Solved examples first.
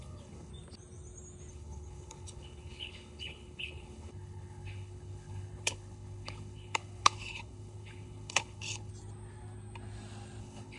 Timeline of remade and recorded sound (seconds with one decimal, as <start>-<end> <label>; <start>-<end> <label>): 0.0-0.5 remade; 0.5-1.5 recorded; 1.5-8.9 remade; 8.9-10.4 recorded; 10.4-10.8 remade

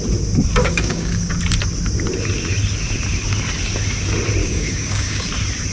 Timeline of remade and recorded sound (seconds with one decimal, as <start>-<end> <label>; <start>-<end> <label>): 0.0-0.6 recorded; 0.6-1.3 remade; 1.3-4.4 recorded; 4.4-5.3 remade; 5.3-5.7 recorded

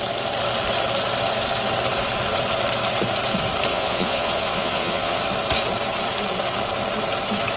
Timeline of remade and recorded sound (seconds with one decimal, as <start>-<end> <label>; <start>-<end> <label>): 0.0-3.7 recorded; 3.7-5.2 remade; 5.2-7.6 recorded